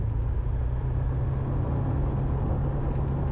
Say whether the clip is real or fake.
real